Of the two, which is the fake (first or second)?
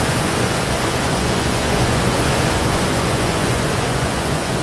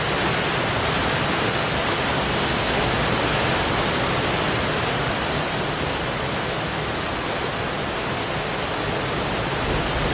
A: first